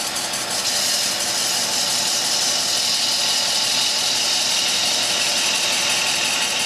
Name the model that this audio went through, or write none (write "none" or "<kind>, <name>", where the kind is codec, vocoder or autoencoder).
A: none